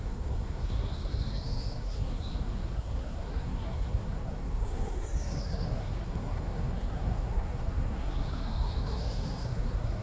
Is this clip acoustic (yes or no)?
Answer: no